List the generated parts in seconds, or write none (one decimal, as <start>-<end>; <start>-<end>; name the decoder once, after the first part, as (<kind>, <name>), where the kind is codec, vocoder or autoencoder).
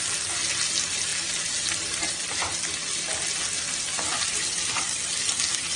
none